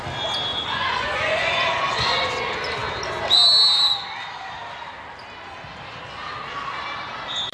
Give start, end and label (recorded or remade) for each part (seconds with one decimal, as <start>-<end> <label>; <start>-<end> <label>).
0.0-0.5 recorded; 0.5-2.3 remade; 2.3-7.5 recorded

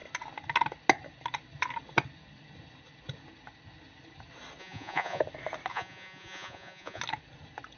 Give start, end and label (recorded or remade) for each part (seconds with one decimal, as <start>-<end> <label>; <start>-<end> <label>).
0.0-4.6 recorded; 4.6-5.2 remade; 5.2-5.7 recorded; 5.7-7.0 remade; 7.0-7.8 recorded

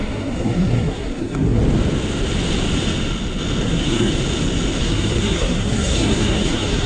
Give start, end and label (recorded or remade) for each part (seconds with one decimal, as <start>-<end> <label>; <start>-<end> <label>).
0.0-1.6 remade; 1.6-3.6 recorded; 3.6-4.1 remade; 4.1-4.8 recorded; 4.8-6.9 remade